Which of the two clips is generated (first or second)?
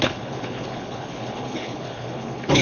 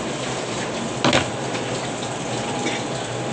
first